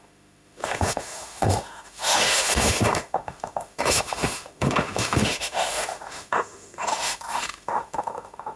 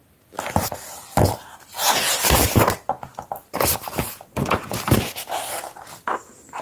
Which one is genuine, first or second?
second